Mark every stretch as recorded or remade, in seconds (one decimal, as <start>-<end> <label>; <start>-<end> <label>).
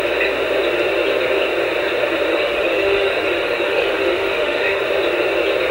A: 0.0-2.3 recorded; 2.3-4.8 remade; 4.8-5.7 recorded